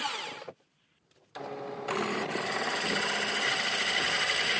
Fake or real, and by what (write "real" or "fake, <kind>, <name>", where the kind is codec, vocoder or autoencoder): real